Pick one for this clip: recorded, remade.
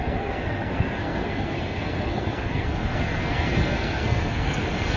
remade